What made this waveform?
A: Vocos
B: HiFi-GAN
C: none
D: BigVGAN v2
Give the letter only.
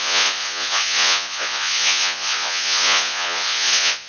A